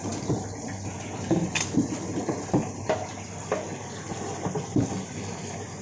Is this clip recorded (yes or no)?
yes